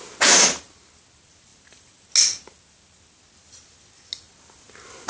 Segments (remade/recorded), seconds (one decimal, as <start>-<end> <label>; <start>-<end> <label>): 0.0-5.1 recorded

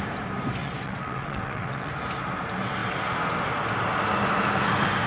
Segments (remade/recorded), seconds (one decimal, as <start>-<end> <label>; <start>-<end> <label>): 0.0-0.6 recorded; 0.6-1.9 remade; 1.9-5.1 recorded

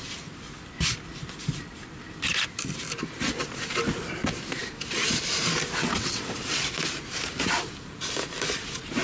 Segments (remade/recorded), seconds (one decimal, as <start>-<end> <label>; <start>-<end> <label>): 0.0-5.9 recorded; 5.9-6.7 remade; 6.7-9.0 recorded